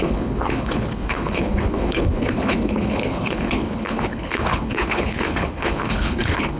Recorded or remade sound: remade